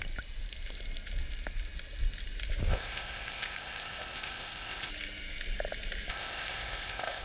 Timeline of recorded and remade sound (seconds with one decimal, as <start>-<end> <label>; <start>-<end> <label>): 0.0-2.7 recorded; 2.7-4.9 remade; 4.9-6.1 recorded; 6.1-7.2 remade